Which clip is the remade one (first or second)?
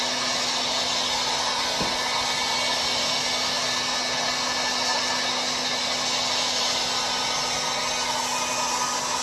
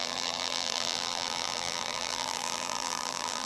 second